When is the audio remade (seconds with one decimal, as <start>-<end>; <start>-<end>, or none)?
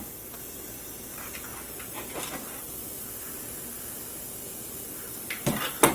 none